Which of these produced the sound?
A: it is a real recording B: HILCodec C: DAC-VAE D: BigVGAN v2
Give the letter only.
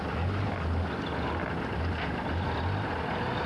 A